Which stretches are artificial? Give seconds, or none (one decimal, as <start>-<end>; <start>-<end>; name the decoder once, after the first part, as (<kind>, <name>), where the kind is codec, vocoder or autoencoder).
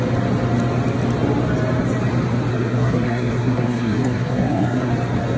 2.5-4.9 (codec, SNAC)